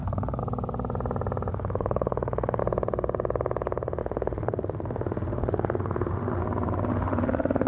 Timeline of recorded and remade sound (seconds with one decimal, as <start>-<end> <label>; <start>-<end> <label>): 0.0-0.4 remade; 0.4-1.5 recorded; 1.5-2.6 remade; 2.6-4.0 recorded; 4.0-6.4 remade; 6.4-6.9 recorded; 6.9-7.7 remade